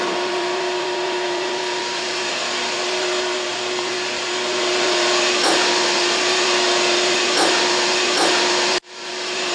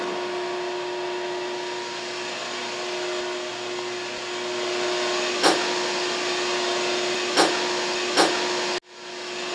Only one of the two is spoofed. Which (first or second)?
first